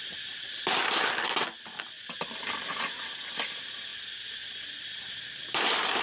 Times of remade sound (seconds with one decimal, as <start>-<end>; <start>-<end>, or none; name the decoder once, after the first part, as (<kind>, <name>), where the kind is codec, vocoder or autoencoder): none